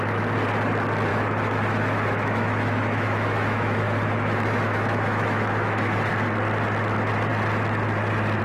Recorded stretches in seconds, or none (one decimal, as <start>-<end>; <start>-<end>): 0.0-1.1; 6.1-8.4